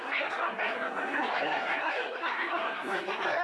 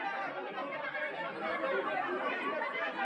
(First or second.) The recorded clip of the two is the second